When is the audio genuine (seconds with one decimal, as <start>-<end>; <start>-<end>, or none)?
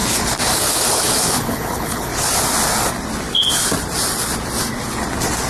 0.0-0.9; 2.1-5.5